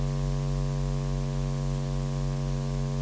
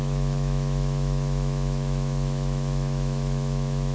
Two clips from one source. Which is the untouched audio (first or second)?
first